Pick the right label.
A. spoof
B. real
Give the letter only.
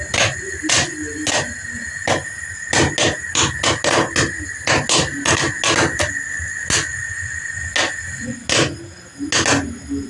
B